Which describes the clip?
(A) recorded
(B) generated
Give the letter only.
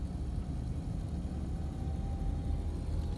A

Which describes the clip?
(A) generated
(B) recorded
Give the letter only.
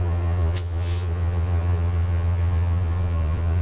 A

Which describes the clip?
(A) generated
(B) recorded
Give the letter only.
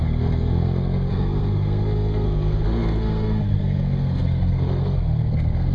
A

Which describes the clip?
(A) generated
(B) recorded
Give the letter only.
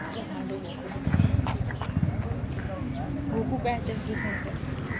B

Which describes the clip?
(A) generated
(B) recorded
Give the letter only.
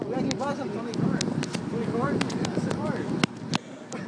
B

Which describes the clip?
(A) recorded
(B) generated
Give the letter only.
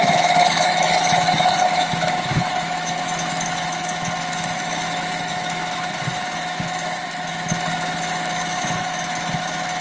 B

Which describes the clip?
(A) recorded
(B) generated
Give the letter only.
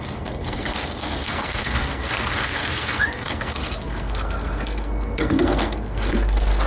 B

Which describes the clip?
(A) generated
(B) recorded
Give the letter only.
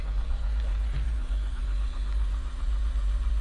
A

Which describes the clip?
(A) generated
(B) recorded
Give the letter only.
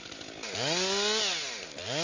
B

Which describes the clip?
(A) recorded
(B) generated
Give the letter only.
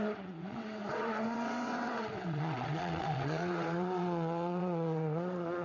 B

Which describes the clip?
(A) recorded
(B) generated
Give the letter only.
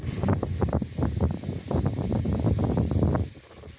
A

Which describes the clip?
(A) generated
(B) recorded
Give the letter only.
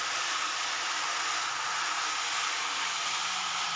B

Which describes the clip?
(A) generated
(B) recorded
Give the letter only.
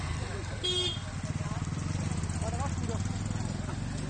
B